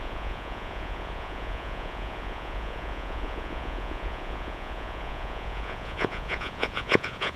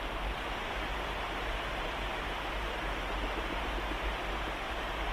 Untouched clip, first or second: second